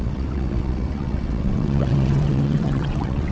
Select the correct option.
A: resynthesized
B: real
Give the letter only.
A